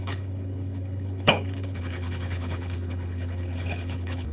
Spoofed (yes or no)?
yes